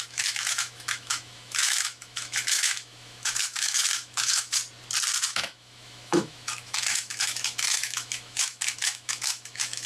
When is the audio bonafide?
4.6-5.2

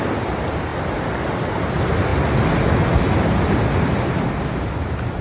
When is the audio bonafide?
0.0-5.2

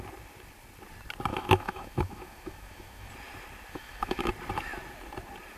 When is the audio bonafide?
0.0-1.3; 3.1-3.7; 4.3-5.6

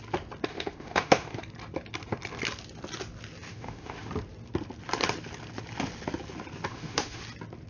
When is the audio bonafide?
0.0-0.5; 1.4-3.5; 4.1-6.7; 7.2-7.7

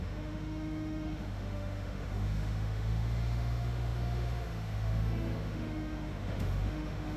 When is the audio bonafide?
none

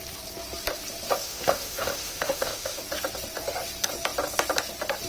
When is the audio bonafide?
0.0-1.2; 2.8-5.1